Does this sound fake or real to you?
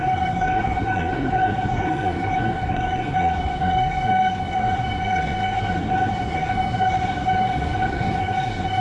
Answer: fake